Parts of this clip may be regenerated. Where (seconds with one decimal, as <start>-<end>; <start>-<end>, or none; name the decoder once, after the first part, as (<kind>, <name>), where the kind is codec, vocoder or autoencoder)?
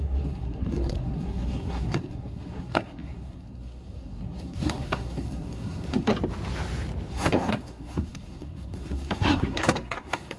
0.0-6.1 (codec, SNAC); 7.1-10.4